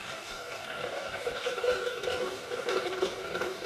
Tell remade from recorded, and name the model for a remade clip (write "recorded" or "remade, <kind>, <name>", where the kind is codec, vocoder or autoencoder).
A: remade, codec, DAC